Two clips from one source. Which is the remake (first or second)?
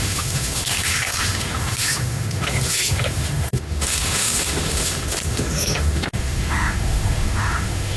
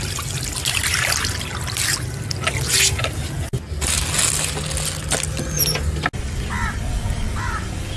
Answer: first